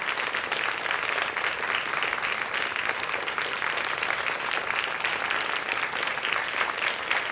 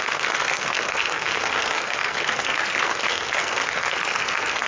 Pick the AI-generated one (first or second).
second